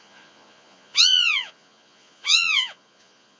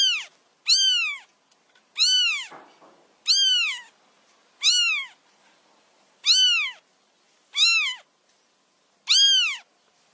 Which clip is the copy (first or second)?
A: first